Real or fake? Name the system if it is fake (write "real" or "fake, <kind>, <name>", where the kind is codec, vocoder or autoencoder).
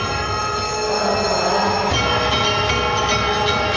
real